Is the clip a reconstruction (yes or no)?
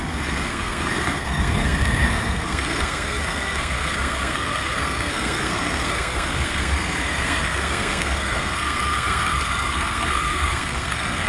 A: yes